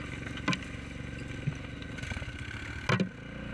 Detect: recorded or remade recorded